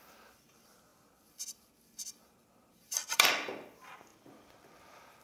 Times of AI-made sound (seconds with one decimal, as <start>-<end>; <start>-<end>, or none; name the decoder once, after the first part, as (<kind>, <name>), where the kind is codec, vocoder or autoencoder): 0.9-1.7 (vocoder, BigVGAN v2); 2.4-3.3